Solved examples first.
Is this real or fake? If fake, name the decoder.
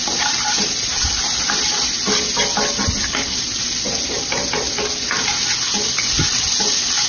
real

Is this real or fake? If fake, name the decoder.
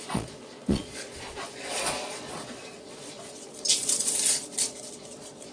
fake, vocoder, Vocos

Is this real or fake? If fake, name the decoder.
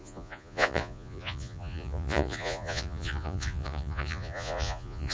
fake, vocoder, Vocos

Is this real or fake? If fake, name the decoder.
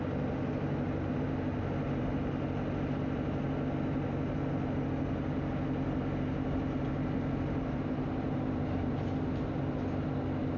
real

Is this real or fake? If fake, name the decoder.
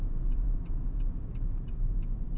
fake, vocoder, Vocos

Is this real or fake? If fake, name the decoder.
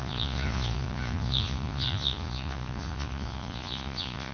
fake, vocoder, Vocos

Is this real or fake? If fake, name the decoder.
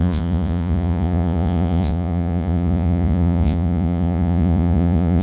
fake, vocoder, Vocos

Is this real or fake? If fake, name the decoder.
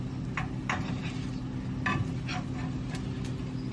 real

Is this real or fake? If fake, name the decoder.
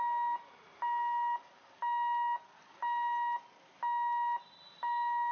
real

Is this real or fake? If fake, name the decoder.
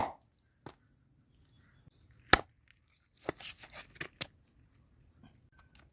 real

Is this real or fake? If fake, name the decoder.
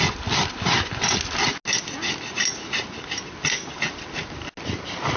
real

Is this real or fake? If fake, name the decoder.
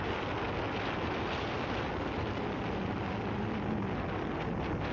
real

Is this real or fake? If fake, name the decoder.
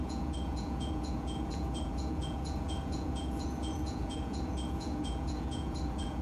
fake, vocoder, Vocos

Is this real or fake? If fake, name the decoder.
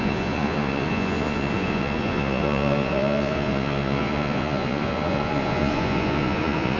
fake, vocoder, Vocos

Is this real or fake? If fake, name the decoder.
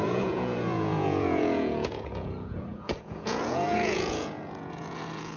fake, vocoder, Vocos